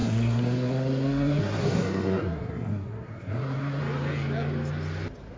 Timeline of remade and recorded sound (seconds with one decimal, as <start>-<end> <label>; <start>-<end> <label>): 0.0-3.8 remade; 3.8-5.4 recorded